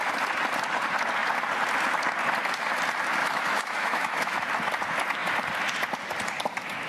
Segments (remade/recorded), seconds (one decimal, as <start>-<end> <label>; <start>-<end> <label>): 0.0-3.2 recorded; 3.2-4.5 remade; 4.5-6.9 recorded